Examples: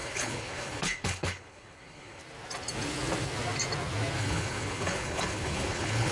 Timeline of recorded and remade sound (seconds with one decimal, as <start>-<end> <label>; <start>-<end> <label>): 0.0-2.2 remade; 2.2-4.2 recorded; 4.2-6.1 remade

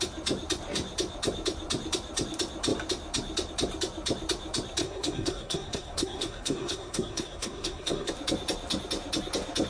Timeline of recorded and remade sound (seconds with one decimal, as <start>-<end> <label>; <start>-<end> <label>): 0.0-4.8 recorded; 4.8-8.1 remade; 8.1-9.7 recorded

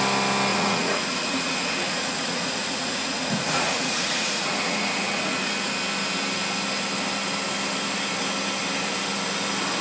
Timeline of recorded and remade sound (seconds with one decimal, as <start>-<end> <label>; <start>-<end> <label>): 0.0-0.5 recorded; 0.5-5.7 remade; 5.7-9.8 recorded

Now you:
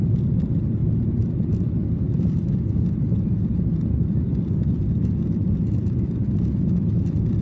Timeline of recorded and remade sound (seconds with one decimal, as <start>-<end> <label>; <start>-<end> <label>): 0.0-7.4 recorded

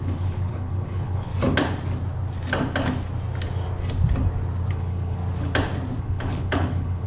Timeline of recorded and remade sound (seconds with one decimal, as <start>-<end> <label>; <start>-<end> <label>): 0.0-1.3 remade; 1.3-4.7 recorded; 4.7-5.2 remade; 5.2-6.0 recorded; 6.0-7.1 remade